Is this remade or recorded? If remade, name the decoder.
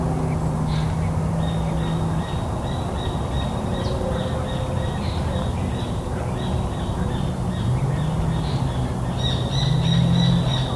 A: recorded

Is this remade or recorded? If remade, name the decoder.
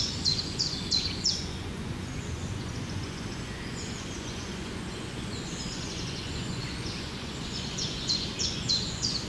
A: remade, vocoder, Vocos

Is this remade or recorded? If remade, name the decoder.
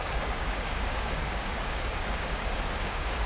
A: remade, codec, DAC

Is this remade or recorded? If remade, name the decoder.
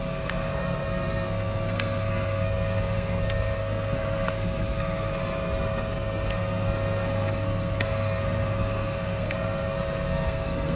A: remade, codec, SNAC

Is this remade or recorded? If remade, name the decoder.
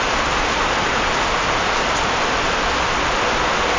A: recorded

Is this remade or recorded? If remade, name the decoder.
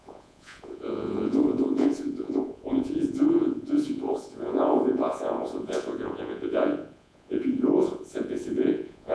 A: remade, vocoder, Vocos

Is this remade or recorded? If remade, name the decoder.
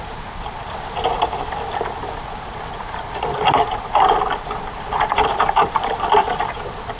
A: remade, vocoder, BigVGAN v2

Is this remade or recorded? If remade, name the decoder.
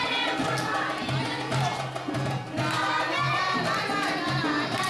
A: recorded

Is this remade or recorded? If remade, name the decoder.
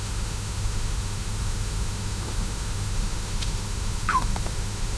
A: remade, autoencoder, DAC-VAE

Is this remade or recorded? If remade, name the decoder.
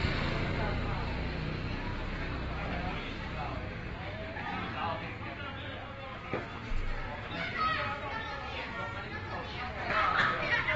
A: recorded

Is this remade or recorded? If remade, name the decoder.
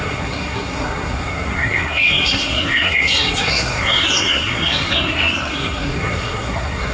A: remade, codec, SNAC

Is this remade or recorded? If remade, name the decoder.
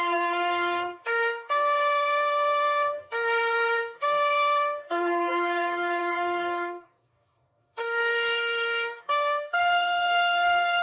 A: remade, codec, DAC